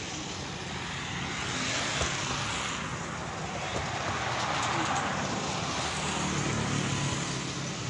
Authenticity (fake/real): real